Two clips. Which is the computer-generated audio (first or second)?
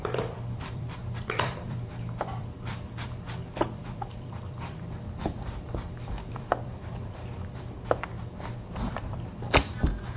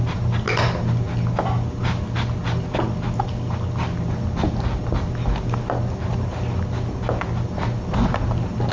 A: first